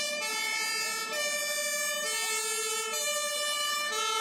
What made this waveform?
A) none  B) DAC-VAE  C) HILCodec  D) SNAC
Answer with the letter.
A